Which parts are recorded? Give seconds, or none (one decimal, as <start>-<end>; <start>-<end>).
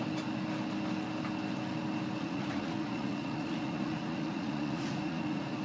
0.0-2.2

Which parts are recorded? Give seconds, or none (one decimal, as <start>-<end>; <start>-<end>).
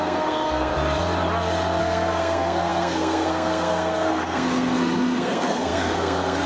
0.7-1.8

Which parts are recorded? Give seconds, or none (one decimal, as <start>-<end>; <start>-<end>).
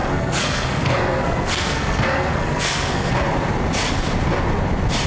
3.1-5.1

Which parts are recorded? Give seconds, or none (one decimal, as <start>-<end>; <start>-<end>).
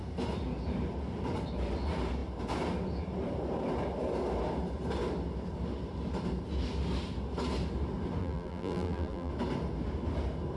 0.0-8.2; 9.3-10.6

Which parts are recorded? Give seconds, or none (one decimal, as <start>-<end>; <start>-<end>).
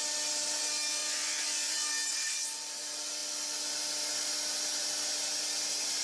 0.0-1.0; 1.9-6.0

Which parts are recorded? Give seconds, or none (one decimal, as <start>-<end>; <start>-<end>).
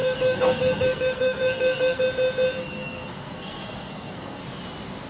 2.0-2.6; 4.4-5.1